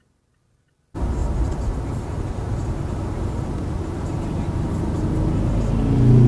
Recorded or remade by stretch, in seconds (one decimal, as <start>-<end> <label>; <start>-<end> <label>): 0.0-1.2 recorded; 1.2-2.2 remade; 2.2-6.3 recorded